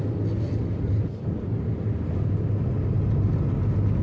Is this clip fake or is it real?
real